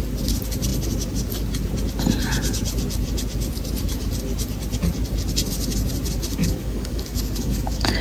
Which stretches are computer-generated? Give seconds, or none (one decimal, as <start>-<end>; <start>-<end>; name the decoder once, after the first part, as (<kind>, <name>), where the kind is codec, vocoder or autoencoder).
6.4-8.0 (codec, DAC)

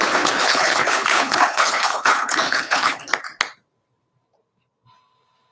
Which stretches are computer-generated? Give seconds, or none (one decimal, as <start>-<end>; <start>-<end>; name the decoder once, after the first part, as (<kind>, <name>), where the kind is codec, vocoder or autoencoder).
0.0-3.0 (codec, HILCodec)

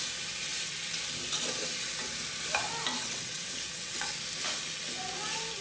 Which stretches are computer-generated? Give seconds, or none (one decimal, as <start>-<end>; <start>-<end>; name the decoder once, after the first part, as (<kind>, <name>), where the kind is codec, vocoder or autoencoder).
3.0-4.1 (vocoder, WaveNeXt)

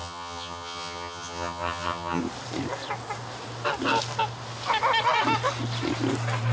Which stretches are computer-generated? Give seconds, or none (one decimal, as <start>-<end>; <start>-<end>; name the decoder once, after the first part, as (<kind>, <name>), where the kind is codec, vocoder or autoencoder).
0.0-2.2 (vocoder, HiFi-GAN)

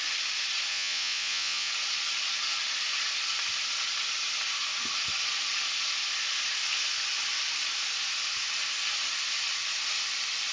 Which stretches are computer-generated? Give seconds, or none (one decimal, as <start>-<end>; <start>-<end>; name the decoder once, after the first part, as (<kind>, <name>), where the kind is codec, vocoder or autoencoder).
0.7-1.7 (vocoder, Vocos)

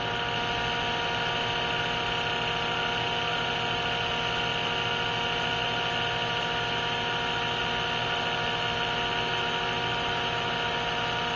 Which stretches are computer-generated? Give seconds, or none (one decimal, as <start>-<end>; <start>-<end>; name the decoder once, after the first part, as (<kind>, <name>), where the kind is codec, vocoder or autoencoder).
none

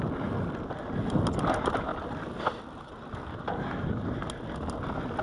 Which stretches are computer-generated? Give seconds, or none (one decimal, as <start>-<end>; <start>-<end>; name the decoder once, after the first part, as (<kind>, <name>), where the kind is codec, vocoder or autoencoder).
1.9-3.4 (vocoder, BigVGAN v2)